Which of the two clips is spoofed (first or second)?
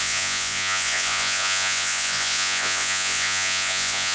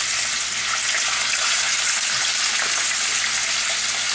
first